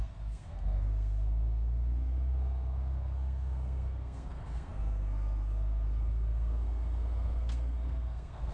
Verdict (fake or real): fake